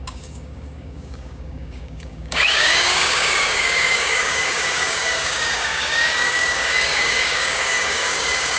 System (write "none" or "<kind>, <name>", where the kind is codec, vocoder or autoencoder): codec, DAC